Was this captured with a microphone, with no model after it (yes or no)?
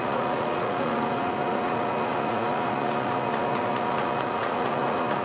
no